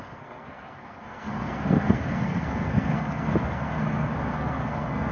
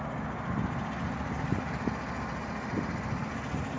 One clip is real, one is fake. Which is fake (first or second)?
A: first